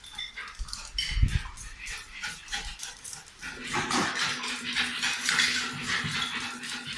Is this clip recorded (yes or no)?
yes